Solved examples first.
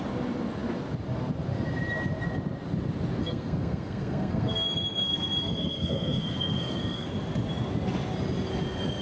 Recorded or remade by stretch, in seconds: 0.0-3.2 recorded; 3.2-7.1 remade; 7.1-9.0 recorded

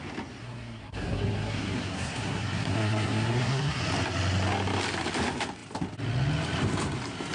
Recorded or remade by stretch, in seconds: 0.0-0.4 recorded; 0.4-3.8 remade; 3.8-7.3 recorded

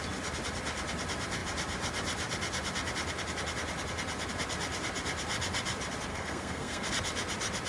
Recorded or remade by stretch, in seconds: 0.0-6.1 recorded; 6.1-6.9 remade; 6.9-7.7 recorded

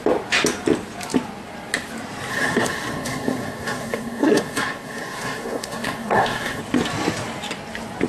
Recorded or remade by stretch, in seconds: 0.0-2.3 recorded; 2.3-6.6 remade; 6.6-8.1 recorded

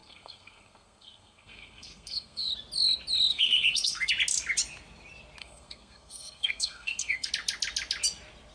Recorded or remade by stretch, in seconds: 0.0-2.5 remade; 2.5-3.3 recorded; 3.3-4.1 remade; 4.1-5.4 recorded; 5.4-7.3 remade; 7.3-8.5 recorded

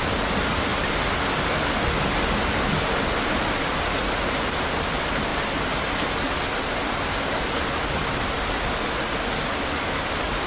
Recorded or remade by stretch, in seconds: 0.0-10.5 recorded

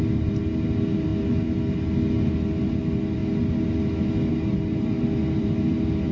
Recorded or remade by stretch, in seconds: 0.0-6.1 recorded

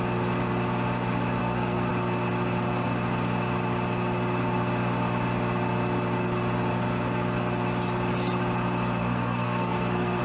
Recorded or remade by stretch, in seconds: 0.0-1.4 recorded; 1.4-1.9 remade; 1.9-9.0 recorded; 9.0-10.2 remade